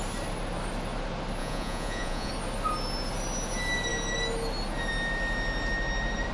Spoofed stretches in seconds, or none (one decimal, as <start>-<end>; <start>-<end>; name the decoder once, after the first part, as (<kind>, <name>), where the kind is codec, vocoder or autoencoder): 1.4-2.3 (vocoder, Vocos)